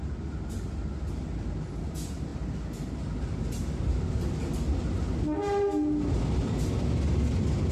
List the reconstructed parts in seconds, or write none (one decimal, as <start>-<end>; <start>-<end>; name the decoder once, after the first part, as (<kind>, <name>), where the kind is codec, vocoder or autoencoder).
none